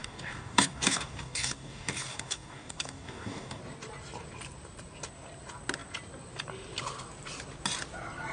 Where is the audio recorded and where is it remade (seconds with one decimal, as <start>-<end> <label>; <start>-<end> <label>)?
0.0-3.6 remade; 3.6-8.3 recorded